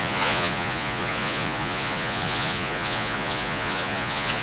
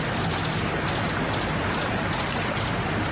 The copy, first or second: first